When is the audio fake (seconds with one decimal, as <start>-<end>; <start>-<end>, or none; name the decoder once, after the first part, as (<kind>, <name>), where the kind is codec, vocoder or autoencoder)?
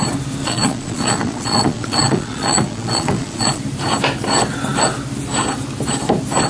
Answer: 0.4-3.6 (vocoder, Vocos)